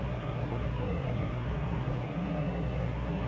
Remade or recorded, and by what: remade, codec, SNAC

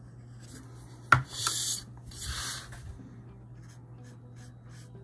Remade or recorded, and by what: recorded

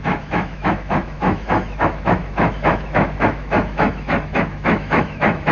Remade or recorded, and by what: remade, autoencoder, DAC-VAE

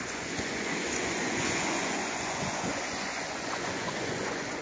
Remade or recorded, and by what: remade, vocoder, Vocos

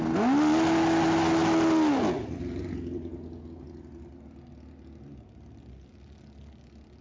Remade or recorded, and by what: recorded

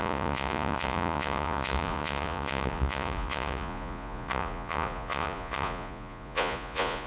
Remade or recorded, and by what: remade, vocoder, Vocos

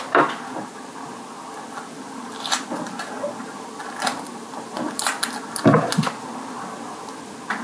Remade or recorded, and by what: recorded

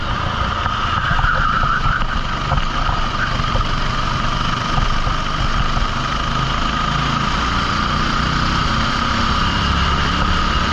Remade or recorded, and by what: recorded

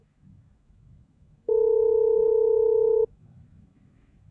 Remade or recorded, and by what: remade, autoencoder, DAC-VAE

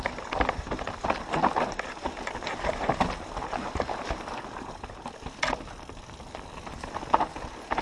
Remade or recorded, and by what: recorded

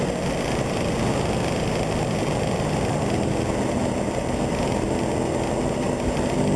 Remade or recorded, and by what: recorded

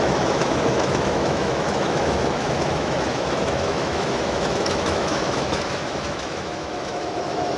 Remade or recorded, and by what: remade, autoencoder, DAC-VAE